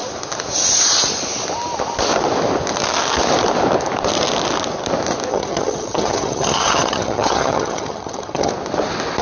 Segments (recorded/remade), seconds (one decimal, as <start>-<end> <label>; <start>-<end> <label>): 0.0-5.3 recorded; 5.3-8.5 remade; 8.5-9.2 recorded